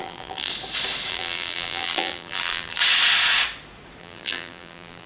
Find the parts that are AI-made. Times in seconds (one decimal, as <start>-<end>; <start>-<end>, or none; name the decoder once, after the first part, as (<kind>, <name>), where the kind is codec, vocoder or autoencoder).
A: 0.0-0.5 (vocoder, BigVGAN v2); 1.1-2.8; 4.0-5.1